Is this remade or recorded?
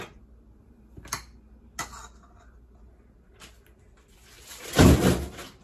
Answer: recorded